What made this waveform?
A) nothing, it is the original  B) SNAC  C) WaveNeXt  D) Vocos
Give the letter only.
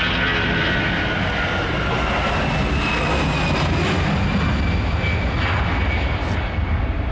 A